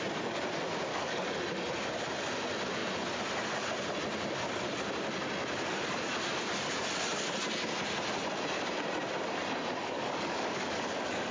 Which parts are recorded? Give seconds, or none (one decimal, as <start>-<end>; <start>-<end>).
0.0-0.9; 1.4-9.8